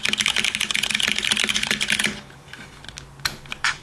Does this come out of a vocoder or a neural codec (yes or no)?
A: no